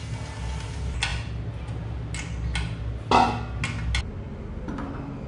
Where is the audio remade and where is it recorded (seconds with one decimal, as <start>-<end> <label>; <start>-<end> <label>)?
0.0-5.3 recorded